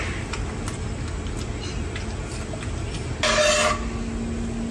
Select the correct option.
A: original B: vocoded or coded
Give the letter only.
A